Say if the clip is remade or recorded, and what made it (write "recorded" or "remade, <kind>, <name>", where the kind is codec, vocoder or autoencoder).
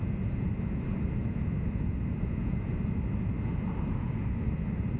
recorded